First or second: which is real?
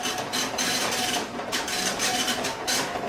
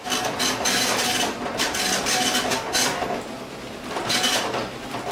second